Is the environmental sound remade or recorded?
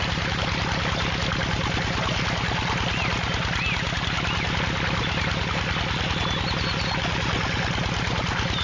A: recorded